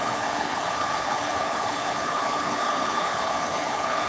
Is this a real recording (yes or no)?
no